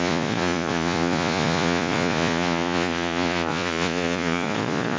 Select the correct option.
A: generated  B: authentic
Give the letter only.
A